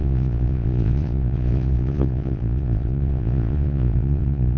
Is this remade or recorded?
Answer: remade